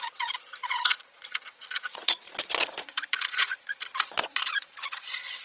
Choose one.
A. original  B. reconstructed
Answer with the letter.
B